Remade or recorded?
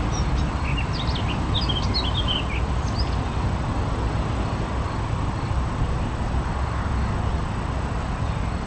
recorded